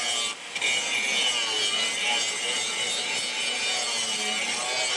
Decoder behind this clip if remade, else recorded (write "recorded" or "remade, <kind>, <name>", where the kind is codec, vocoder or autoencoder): recorded